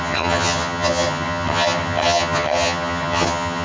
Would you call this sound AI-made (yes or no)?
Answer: yes